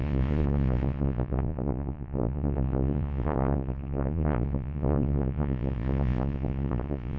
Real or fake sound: fake